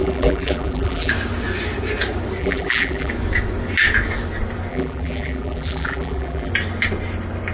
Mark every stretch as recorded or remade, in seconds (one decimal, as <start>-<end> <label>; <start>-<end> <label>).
0.0-1.1 remade; 1.1-2.4 recorded; 2.4-3.1 remade; 3.1-4.7 recorded; 4.7-6.5 remade; 6.5-7.5 recorded